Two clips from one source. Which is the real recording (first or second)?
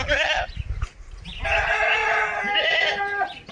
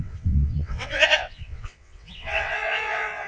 first